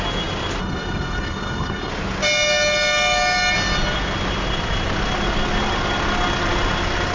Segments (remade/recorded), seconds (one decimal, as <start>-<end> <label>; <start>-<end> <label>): 0.0-0.6 recorded; 0.6-1.9 remade; 1.9-7.1 recorded